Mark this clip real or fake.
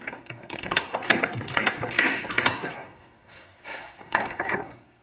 fake